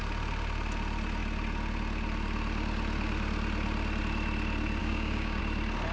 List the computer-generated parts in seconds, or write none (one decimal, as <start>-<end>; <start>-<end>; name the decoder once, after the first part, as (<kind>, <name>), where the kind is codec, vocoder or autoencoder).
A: 4.8-5.4 (codec, DAC)